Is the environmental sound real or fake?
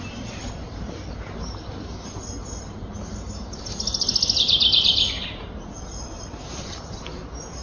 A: real